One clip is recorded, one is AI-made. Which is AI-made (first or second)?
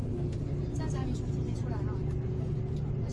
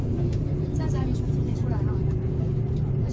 second